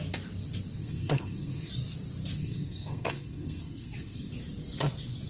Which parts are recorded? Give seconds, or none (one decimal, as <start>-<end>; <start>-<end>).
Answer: 0.0-0.8; 1.7-2.4; 4.3-5.3